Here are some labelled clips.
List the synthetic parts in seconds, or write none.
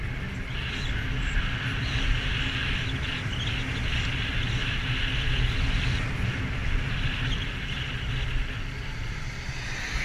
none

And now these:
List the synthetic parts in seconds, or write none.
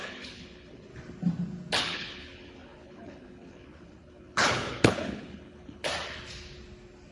0.0-0.9 (codec, HILCodec); 1.8-5.9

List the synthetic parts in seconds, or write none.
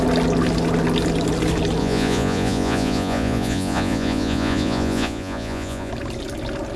1.8-5.9 (vocoder, Vocos)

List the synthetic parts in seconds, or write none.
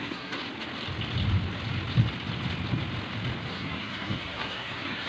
0.0-0.4 (codec, SNAC); 3.5-5.1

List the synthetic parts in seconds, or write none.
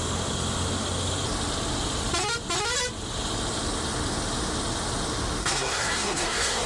5.4-6.7 (codec, SNAC)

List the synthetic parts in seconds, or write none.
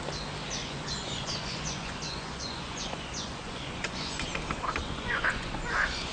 0.6-4.3 (vocoder, Vocos); 4.8-6.1